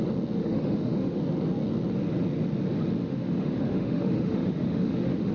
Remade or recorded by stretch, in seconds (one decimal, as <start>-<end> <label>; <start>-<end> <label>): 0.0-0.4 recorded; 0.4-1.2 remade; 1.2-3.0 recorded; 3.0-5.3 remade